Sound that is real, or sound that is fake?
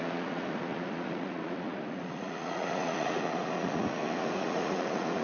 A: fake